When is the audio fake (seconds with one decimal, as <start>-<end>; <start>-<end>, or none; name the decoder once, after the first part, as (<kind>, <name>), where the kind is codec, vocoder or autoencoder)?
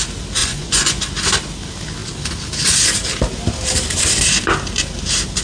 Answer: 0.4-1.0 (vocoder, Vocos)